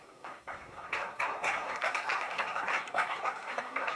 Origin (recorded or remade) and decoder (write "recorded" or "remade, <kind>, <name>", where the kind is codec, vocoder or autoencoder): remade, codec, SNAC